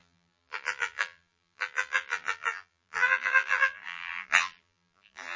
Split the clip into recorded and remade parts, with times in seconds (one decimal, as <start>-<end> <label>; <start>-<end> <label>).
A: 0.0-5.4 remade